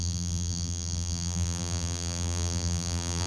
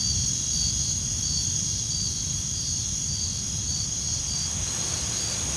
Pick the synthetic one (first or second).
first